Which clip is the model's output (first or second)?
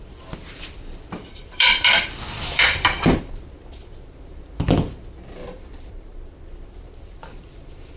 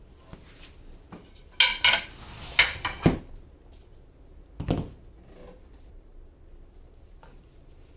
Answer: first